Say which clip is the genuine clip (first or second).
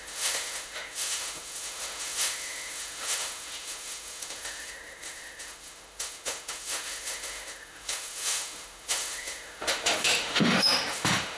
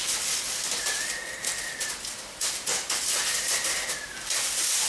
second